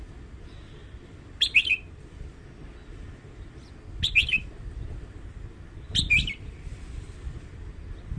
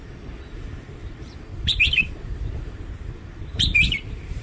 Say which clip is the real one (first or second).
first